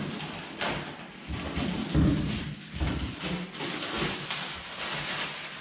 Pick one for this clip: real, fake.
real